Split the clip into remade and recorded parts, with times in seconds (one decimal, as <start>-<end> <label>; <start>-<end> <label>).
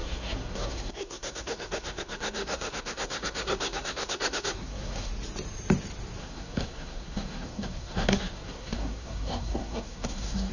0.0-5.1 remade; 5.1-6.2 recorded; 6.2-10.5 remade